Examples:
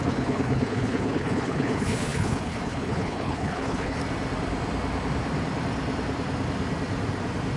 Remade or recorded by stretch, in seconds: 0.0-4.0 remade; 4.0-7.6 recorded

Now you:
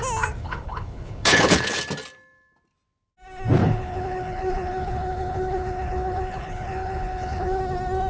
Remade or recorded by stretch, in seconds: 0.0-0.4 recorded; 0.4-1.8 remade; 1.8-3.6 recorded; 3.6-7.6 remade; 7.6-8.1 recorded

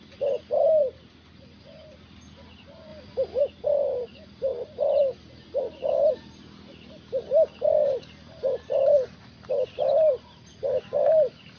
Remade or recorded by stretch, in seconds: 0.0-11.6 recorded

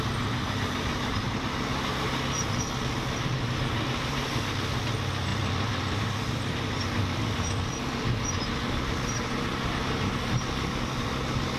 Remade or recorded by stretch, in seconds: 0.0-5.3 recorded; 5.3-6.8 remade; 6.8-11.6 recorded

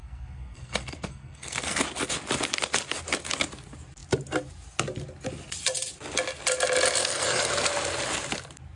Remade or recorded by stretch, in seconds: 0.0-1.8 remade; 1.8-7.0 recorded; 7.0-7.5 remade; 7.5-8.8 recorded

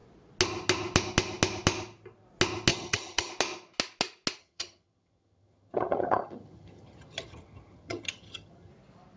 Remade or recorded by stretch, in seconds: 0.0-2.7 recorded; 2.7-3.3 remade; 3.3-4.4 recorded; 4.4-8.7 remade; 8.7-9.2 recorded